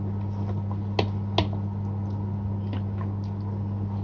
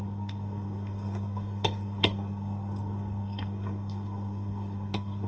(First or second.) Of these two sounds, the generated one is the second